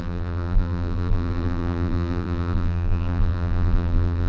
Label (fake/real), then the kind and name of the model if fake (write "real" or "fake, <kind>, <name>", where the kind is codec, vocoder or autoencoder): fake, vocoder, BigVGAN v2